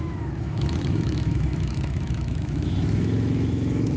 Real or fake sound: fake